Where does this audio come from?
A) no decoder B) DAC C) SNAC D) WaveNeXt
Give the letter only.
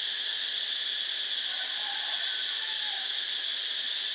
A